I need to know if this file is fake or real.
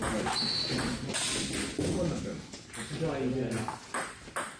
real